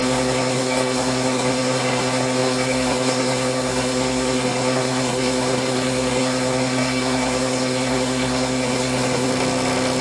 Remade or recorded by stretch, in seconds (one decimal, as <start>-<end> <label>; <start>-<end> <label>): 0.0-9.3 remade; 9.3-10.0 recorded